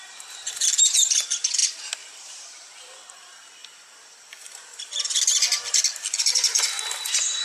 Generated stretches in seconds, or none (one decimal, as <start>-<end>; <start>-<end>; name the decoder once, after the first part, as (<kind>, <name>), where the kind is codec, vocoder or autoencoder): 0.0-7.4 (vocoder, BigVGAN v2)